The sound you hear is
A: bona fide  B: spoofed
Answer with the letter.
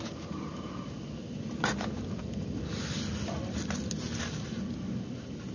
A